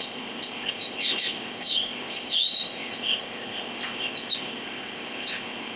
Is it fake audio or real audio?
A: fake